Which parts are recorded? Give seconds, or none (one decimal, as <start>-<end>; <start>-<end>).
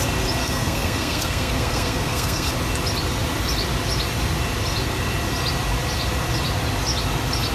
0.0-0.4; 2.5-7.5